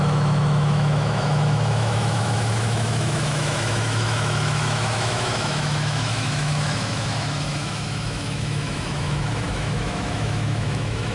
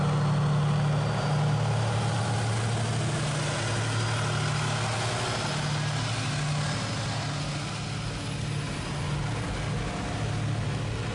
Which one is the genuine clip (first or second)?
second